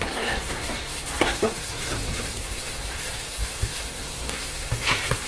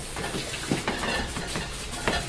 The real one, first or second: second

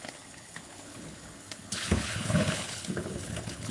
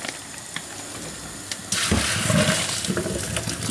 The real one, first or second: second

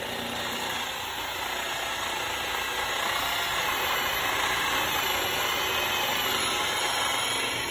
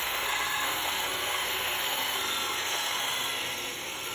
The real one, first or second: first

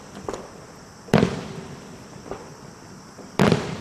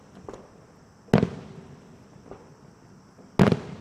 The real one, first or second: second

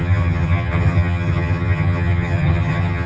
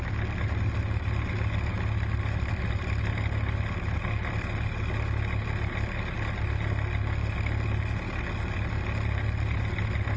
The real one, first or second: second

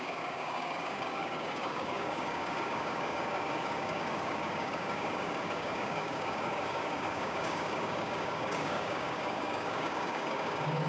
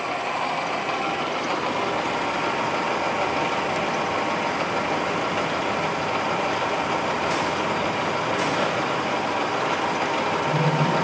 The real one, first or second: second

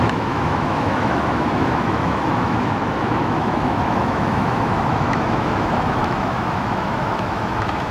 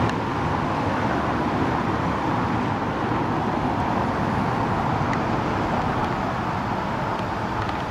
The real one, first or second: second